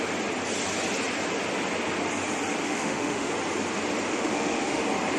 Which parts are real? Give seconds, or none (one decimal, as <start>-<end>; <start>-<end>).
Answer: 0.0-2.6; 3.3-4.1; 4.8-5.2